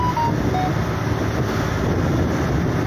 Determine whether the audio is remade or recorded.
recorded